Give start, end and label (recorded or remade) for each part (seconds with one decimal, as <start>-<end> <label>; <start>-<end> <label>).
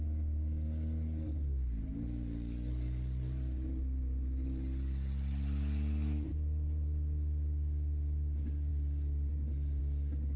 0.0-10.4 recorded